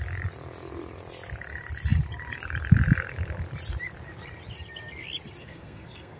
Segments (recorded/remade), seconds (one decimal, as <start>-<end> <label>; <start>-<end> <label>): 0.0-5.4 recorded; 5.4-6.2 remade